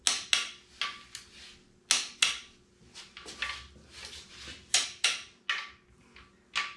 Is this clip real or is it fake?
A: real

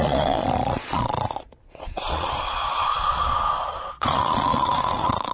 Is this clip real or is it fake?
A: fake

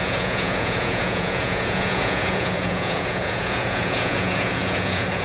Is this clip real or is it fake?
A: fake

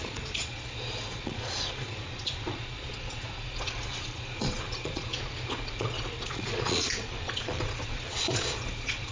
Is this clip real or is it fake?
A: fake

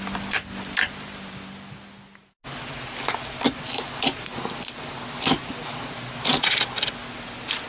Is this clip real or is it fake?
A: real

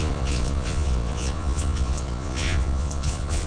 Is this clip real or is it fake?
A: fake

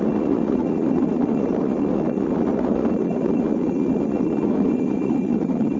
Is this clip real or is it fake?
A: fake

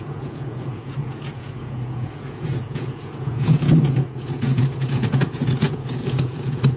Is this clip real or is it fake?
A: fake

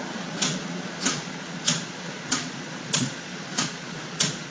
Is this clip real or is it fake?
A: fake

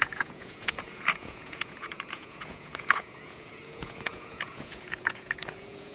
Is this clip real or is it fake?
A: fake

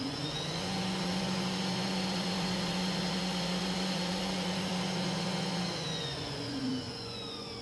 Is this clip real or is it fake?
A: fake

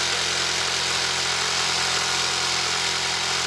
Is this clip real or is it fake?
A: real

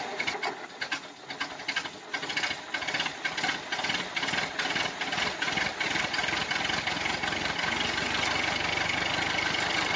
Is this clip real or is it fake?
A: real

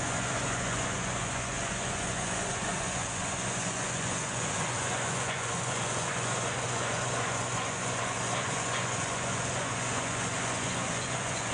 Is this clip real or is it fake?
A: fake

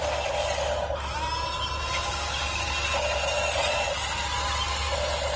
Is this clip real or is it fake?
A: real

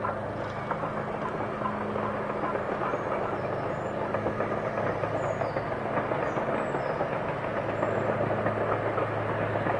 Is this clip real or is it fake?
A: real